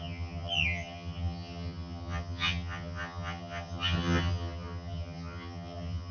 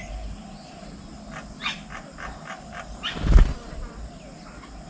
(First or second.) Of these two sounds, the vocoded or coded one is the first